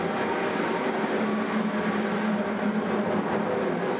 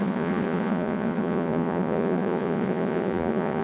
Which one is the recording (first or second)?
first